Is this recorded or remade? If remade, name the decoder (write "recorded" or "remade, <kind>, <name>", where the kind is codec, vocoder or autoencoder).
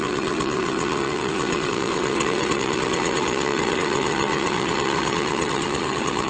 remade, vocoder, WaveNeXt